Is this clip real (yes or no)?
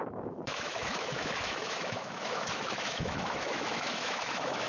no